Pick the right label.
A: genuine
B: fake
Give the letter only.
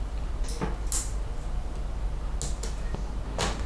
A